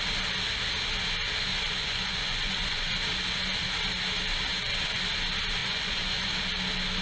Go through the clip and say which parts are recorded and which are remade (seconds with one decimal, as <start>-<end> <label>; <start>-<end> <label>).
0.0-1.5 recorded; 1.5-2.9 remade; 2.9-4.5 recorded; 4.5-5.0 remade; 5.0-5.6 recorded; 5.6-6.3 remade; 6.3-7.0 recorded